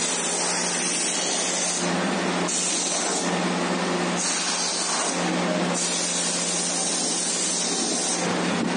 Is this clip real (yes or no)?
yes